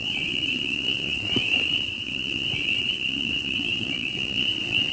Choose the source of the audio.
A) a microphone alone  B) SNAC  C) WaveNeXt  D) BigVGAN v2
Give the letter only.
C